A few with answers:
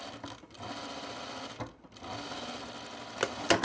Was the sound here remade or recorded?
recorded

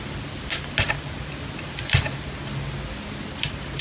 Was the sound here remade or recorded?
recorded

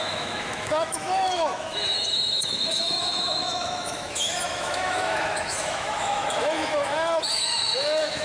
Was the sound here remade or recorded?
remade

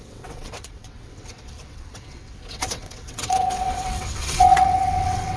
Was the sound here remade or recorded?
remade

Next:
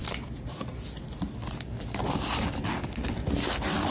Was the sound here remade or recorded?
recorded